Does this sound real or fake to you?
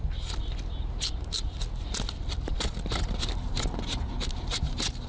real